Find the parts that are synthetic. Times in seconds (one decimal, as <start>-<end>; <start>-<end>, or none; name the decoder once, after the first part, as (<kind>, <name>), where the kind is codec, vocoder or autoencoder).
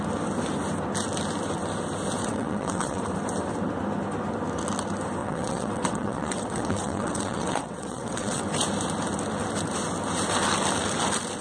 2.2-3.0 (vocoder, WaveNeXt); 5.2-8.4